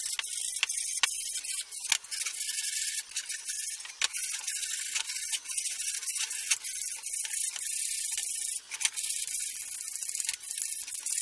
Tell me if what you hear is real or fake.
real